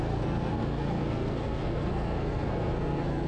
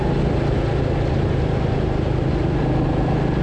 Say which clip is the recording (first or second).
second